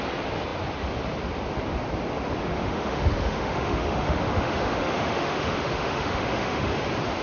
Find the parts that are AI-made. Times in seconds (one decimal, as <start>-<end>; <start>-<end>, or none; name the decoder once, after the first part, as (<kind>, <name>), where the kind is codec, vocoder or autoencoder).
2.4-6.7 (autoencoder, DAC-VAE)